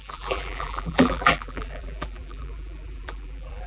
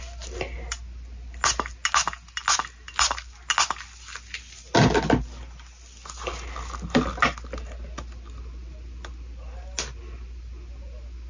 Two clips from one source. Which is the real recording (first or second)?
second